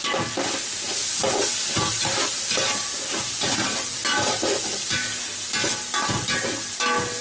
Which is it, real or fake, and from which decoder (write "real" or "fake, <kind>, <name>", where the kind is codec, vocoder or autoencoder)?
real